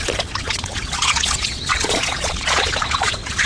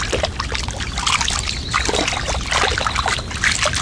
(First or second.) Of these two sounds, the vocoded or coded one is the first